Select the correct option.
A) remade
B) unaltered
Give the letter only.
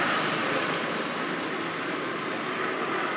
B